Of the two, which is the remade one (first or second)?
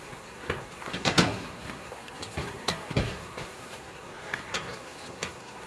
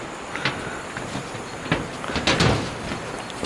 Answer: first